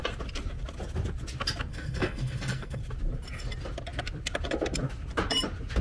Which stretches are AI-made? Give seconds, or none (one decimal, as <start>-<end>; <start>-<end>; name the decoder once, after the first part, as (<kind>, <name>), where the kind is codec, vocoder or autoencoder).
1.7-2.8 (codec, SNAC)